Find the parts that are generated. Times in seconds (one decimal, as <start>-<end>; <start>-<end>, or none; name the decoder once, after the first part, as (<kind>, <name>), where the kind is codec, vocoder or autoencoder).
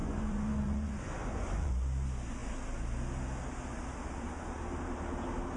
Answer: 0.0-1.7 (vocoder, Vocos)